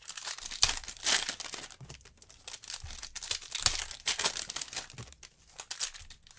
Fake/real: real